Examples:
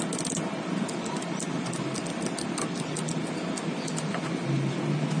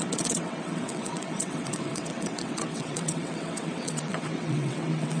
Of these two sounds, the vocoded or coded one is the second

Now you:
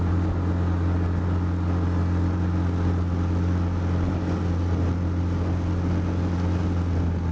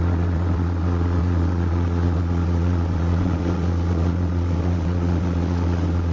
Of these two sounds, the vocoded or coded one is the second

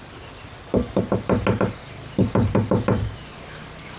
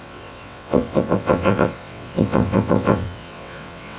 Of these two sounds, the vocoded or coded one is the second